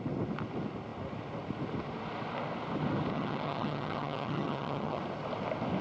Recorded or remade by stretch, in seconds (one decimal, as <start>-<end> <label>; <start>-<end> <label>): 0.0-3.1 recorded; 3.1-5.0 remade; 5.0-5.8 recorded